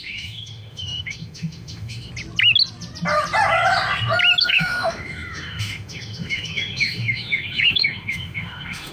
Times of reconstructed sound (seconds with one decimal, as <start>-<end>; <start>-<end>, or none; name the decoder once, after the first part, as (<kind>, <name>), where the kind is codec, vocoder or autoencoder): 0.0-2.1 (autoencoder, DAC-VAE); 4.4-8.9